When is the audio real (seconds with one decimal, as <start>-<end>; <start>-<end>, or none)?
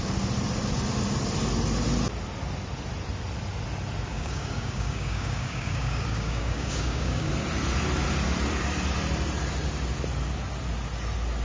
0.0-4.1; 7.3-11.4